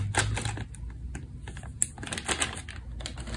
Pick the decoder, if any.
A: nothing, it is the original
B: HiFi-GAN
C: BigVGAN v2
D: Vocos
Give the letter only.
A